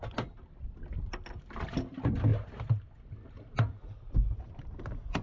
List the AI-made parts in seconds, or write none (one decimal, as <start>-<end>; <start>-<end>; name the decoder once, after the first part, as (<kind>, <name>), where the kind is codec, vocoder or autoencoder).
none